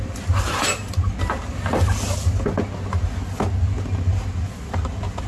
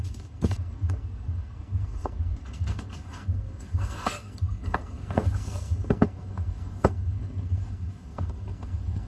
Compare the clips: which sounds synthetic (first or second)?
second